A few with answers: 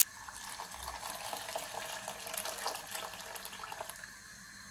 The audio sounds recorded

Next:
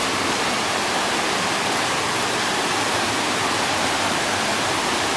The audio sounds recorded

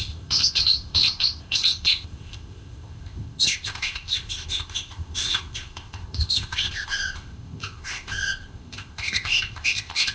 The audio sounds remade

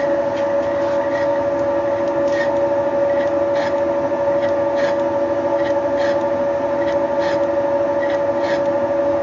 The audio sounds recorded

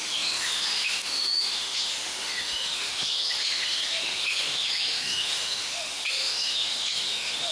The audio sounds remade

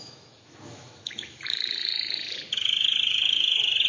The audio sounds remade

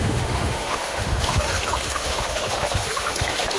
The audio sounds remade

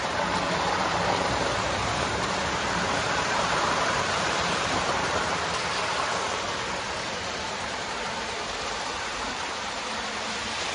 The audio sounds remade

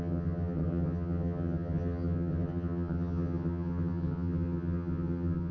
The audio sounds remade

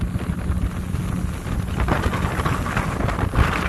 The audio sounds recorded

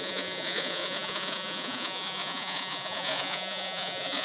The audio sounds remade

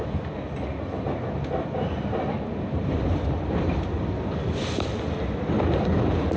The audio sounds recorded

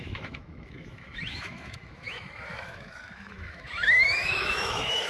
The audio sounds remade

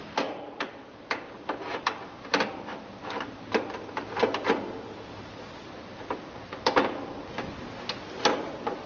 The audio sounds recorded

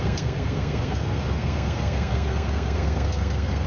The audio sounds remade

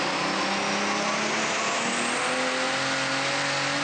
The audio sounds recorded